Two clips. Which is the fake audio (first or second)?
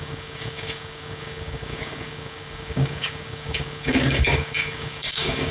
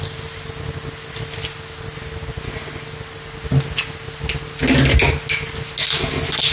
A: first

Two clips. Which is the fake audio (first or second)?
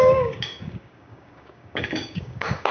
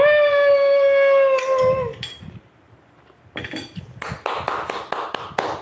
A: first